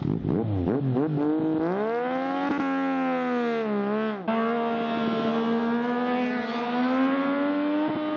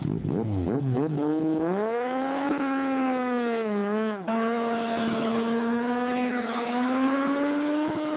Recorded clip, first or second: first